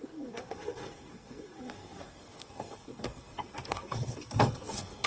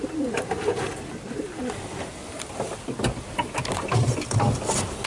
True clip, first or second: second